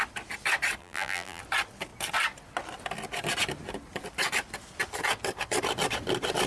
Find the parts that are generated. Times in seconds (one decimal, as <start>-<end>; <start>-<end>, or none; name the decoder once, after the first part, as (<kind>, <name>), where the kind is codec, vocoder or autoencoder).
0.8-1.4 (vocoder, BigVGAN v2)